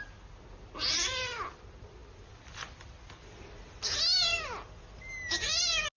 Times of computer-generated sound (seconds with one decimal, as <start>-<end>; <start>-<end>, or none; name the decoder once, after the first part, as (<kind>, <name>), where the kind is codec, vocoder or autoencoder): none